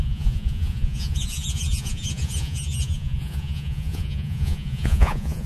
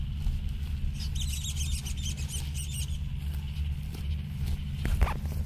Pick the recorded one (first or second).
second